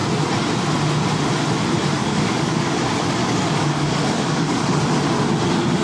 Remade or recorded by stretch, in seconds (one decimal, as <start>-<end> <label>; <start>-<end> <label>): 0.0-2.0 recorded; 2.0-2.7 remade; 2.7-3.2 recorded; 3.2-4.8 remade; 4.8-5.8 recorded